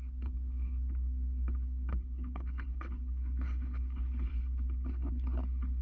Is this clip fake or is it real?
fake